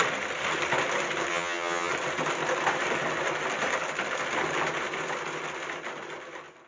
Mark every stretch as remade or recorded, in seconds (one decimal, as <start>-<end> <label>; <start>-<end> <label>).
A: 0.0-1.3 recorded; 1.3-1.9 remade; 1.9-6.7 recorded